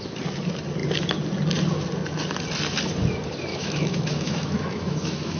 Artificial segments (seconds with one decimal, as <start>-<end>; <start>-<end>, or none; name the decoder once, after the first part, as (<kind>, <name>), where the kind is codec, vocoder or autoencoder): 3.5-5.4 (autoencoder, DAC-VAE)